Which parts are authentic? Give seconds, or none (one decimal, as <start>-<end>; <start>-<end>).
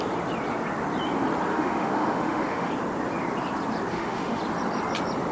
0.0-1.5; 2.7-3.9; 4.4-5.3